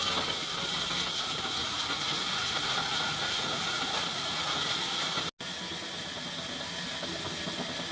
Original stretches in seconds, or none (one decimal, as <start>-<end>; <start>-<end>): 0.0-1.6; 4.7-7.9